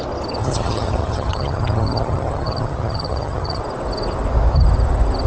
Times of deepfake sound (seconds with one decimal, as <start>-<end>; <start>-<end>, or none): 0.4-3.6